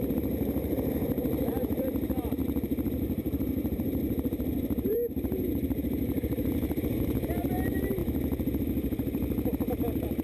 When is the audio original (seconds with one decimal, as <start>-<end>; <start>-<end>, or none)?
8.0-9.7